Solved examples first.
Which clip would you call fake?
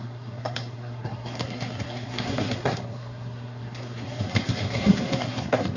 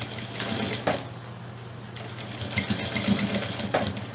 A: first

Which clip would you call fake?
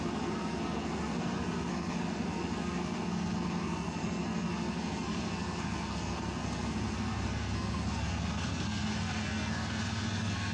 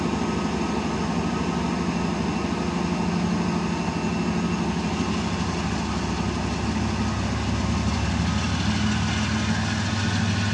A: first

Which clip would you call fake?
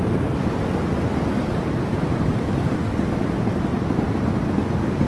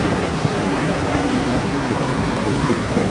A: second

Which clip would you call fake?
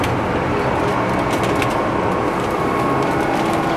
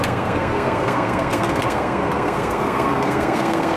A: second